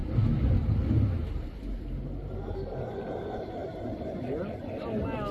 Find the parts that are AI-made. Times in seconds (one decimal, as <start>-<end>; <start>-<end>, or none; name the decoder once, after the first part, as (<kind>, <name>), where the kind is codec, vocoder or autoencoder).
none